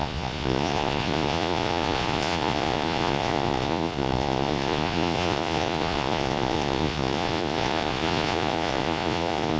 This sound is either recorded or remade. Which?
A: remade